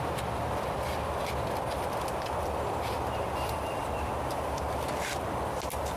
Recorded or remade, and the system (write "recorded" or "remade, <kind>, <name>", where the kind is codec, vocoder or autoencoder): recorded